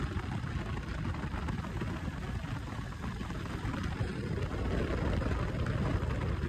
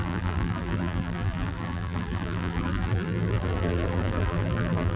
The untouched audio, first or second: first